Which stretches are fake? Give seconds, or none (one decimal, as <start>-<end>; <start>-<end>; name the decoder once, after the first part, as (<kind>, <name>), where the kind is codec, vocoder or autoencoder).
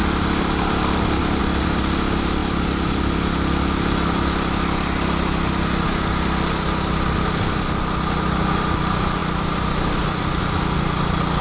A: none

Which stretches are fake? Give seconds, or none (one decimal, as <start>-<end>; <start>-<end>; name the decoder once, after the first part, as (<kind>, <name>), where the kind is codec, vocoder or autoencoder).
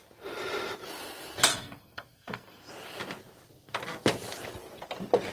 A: 1.5-2.7 (codec, SNAC)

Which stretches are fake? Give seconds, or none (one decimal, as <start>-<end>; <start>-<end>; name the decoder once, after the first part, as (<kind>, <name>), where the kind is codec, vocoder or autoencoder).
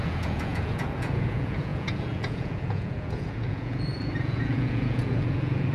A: 0.0-5.7 (vocoder, Vocos)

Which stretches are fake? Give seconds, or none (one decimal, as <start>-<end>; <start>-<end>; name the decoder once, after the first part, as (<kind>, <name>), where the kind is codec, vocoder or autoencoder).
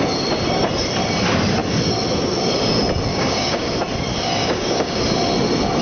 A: 3.1-3.8 (codec, DAC); 4.4-5.0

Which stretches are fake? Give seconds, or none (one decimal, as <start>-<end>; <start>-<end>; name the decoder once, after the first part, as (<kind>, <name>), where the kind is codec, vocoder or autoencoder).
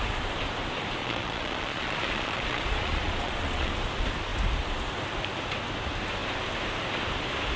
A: 1.0-3.7 (vocoder, Vocos)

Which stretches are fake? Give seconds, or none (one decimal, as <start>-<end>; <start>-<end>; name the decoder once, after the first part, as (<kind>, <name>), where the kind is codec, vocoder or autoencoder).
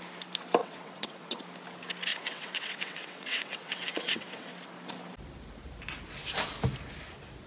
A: 0.6-1.4 (vocoder, WaveNeXt); 2.1-4.5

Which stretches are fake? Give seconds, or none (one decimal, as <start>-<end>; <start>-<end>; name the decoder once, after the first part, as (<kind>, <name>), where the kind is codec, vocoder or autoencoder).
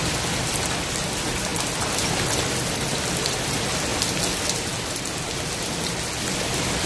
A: none